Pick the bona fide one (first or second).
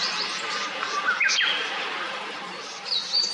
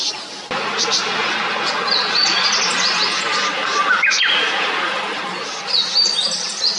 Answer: second